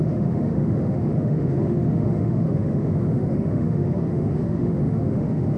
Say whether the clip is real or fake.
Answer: fake